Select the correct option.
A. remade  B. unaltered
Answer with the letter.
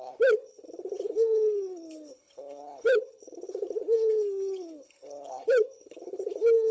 A